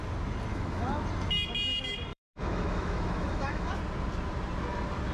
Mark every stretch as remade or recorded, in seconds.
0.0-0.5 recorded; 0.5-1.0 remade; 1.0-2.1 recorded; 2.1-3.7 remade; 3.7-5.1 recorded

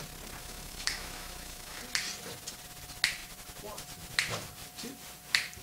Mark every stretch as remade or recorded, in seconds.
0.0-0.4 recorded; 0.4-1.8 remade; 1.8-5.6 recorded